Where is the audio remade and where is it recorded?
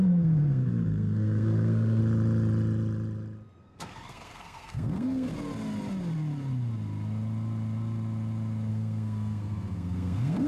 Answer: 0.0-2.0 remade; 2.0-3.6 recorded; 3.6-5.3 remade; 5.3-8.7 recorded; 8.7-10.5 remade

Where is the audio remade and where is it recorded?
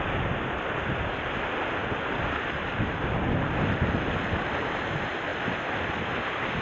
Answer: 0.0-6.6 recorded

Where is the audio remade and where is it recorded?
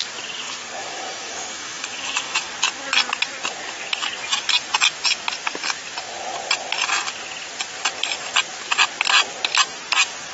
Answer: 0.0-0.8 recorded; 0.8-2.5 remade; 2.5-10.3 recorded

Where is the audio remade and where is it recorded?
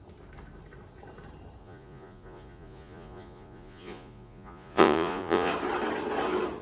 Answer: 0.0-1.6 recorded; 1.6-5.5 remade; 5.5-6.6 recorded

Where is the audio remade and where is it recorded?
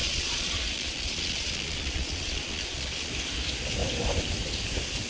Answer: 0.0-3.1 remade; 3.1-5.1 recorded